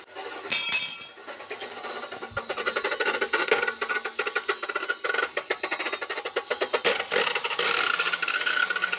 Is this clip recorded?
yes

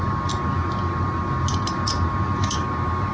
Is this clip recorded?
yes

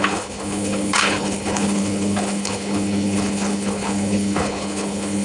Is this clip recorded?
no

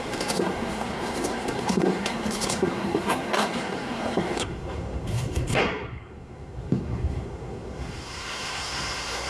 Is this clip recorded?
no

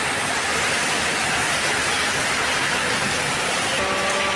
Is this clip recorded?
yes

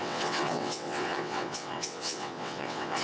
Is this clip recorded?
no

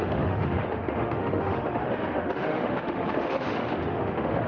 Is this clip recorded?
no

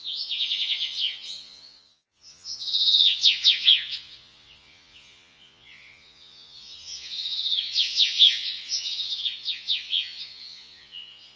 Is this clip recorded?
no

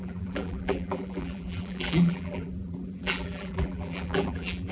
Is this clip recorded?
no